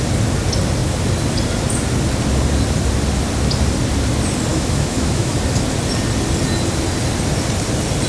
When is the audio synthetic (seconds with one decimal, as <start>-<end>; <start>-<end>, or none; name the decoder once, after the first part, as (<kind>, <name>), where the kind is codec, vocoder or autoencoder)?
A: 4.5-5.3 (autoencoder, DAC-VAE)